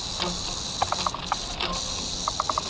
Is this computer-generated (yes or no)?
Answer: no